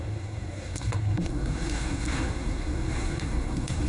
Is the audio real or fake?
fake